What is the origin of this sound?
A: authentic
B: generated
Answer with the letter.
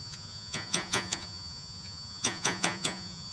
B